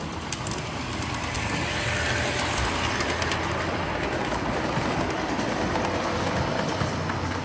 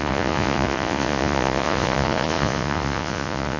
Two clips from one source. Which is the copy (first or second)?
second